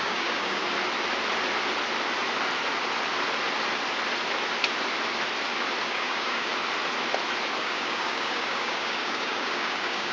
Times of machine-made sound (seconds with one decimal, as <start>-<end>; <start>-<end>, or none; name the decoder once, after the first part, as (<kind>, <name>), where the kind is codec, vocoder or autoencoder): 0.0-0.6 (codec, DAC); 5.9-6.5; 7.6-10.1